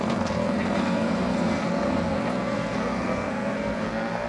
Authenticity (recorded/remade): remade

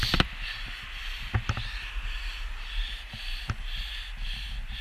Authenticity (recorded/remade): recorded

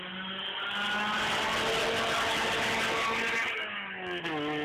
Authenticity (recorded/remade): recorded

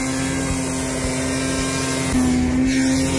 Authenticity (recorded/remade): recorded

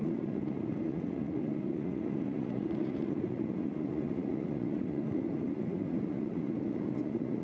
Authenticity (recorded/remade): remade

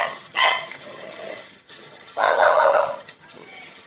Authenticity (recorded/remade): remade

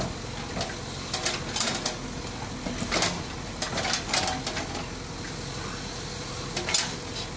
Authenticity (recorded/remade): recorded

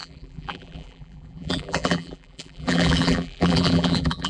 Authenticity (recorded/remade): remade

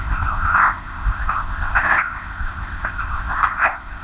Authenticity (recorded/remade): remade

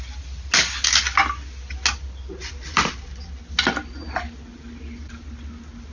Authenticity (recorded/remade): recorded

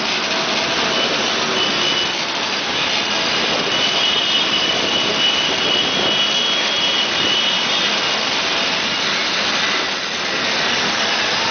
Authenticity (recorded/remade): recorded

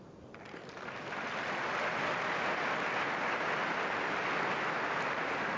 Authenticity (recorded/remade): recorded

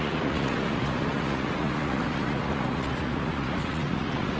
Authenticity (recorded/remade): remade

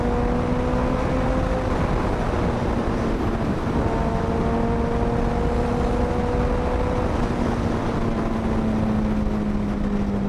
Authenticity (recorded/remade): recorded